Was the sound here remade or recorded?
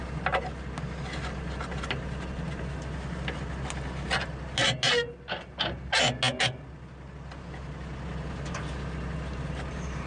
recorded